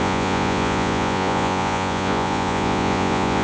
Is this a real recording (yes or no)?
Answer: no